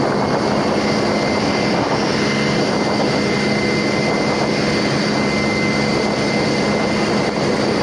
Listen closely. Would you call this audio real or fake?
real